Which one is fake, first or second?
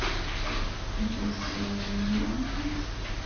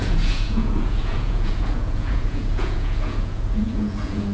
second